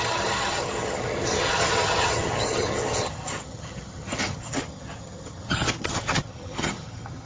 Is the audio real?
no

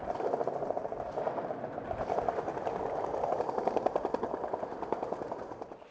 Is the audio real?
yes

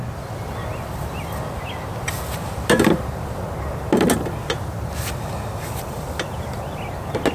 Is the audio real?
yes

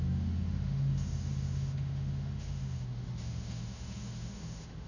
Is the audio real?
no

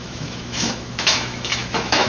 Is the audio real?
no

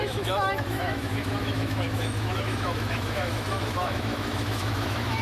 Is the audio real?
no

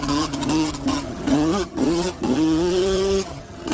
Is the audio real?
no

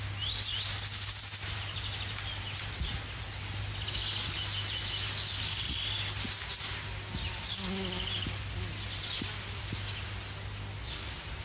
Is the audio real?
yes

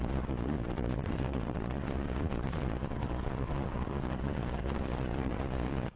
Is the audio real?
no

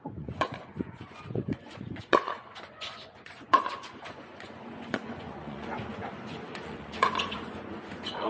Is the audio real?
no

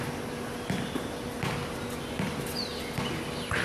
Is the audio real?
yes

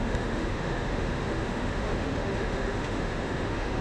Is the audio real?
no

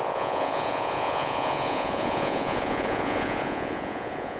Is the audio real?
no